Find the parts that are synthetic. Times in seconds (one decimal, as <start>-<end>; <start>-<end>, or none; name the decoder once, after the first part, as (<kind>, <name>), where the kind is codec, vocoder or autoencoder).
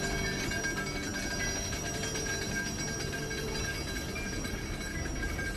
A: none